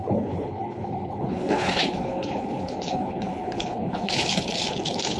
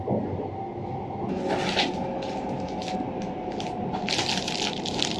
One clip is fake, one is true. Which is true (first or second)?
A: second